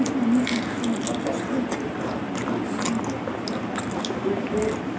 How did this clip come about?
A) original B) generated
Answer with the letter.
A